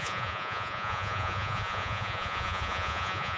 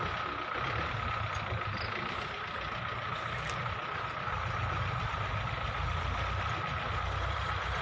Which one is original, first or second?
second